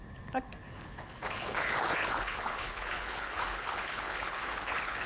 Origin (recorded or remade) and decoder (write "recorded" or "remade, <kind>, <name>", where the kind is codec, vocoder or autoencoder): remade, codec, HILCodec